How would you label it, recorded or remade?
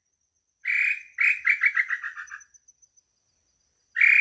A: recorded